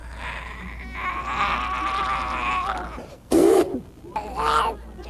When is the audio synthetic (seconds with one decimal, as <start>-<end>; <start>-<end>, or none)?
3.1-3.7